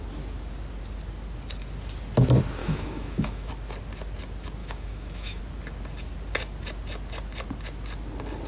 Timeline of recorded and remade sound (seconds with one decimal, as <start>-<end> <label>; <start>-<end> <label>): 0.0-2.6 recorded; 2.6-3.5 remade; 3.5-4.6 recorded; 4.6-5.4 remade; 5.4-8.5 recorded